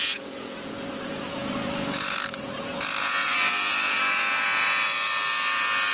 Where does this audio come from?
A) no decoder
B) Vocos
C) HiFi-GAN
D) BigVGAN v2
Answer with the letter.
B